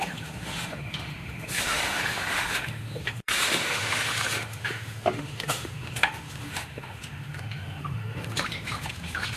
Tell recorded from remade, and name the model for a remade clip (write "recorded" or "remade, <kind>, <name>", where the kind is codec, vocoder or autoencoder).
remade, autoencoder, DAC-VAE